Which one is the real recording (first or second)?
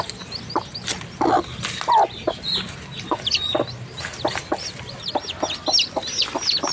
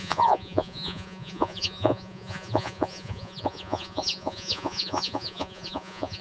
first